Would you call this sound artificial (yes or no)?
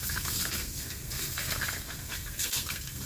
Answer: yes